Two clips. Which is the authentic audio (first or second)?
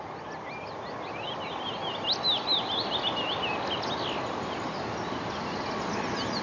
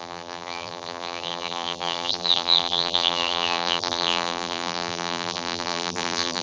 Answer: first